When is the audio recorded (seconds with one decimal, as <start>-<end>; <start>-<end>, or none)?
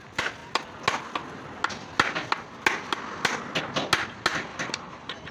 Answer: 0.0-4.5